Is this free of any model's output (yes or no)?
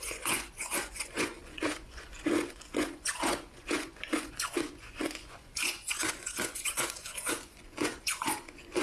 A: no